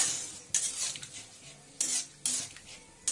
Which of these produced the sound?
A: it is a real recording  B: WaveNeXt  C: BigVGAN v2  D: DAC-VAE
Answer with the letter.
A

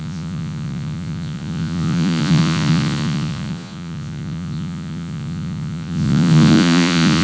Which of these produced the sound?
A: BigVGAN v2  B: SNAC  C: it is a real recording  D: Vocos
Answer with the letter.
D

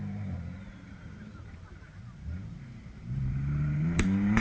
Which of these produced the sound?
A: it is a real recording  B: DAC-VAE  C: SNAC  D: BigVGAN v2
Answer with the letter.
D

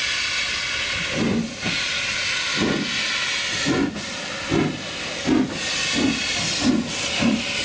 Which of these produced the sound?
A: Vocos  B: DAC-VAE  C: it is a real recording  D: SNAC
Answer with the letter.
C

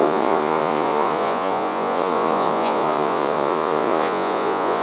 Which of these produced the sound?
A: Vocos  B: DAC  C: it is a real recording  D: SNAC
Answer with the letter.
A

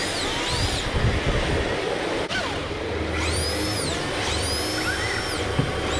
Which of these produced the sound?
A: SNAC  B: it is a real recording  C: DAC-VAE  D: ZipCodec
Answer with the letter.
B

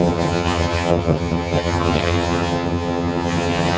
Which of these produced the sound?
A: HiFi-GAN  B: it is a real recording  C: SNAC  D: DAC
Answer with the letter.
A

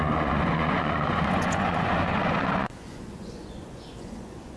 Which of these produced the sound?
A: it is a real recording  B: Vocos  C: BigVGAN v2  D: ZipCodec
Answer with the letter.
B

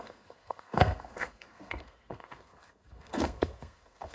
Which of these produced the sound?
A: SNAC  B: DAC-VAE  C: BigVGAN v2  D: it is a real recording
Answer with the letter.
A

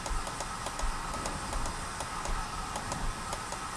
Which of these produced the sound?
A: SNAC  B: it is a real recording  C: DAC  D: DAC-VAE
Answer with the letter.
B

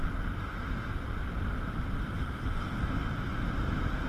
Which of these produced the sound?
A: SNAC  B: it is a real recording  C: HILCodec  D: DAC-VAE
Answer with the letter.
B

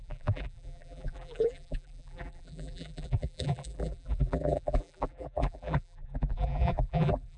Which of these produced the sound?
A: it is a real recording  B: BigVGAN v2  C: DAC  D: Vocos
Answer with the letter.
B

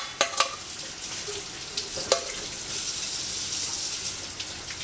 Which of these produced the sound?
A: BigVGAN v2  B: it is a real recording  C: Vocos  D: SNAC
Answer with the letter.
B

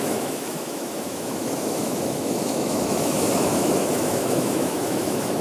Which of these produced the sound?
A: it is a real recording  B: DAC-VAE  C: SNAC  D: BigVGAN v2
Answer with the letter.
B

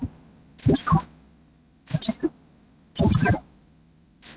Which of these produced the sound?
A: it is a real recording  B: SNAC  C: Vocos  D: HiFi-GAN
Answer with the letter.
A